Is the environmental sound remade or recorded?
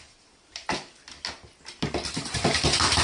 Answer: recorded